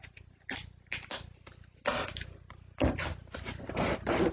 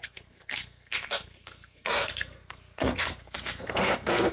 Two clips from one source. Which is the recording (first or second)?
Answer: first